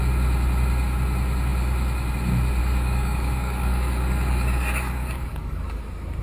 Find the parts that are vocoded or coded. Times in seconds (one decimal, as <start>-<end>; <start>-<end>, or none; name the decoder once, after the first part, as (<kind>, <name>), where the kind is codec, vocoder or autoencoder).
2.6-5.8 (codec, DAC)